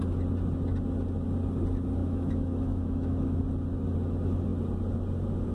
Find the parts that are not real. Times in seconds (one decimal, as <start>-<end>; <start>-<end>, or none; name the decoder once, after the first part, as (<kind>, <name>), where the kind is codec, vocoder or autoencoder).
2.0-3.4 (autoencoder, DAC-VAE)